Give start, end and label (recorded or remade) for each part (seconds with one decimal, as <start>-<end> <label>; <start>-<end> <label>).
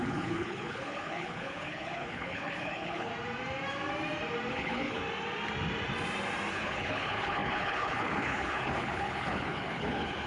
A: 0.0-3.1 remade; 3.1-4.5 recorded; 4.5-5.0 remade; 5.0-6.5 recorded; 6.5-10.3 remade